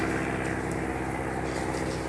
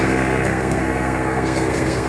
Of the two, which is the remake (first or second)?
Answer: second